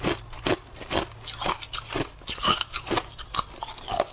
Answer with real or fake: real